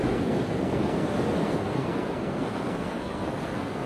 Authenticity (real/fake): fake